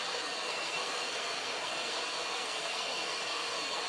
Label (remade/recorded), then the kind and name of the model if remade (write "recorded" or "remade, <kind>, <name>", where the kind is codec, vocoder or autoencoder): remade, codec, SNAC